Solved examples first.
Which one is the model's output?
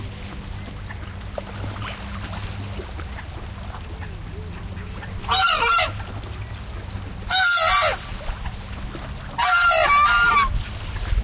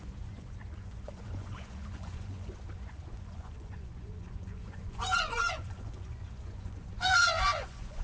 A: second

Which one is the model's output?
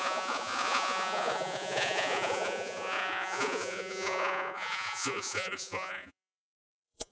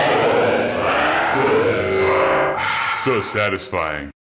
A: first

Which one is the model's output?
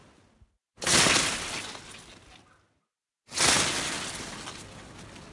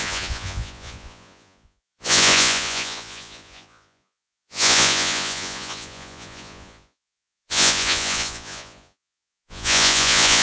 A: second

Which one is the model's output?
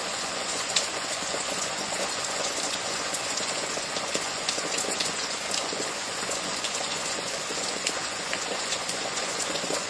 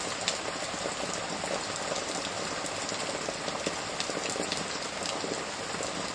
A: first